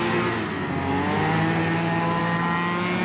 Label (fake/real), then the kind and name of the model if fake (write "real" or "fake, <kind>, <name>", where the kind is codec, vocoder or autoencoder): real